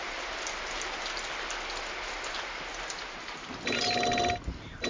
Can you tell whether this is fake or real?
real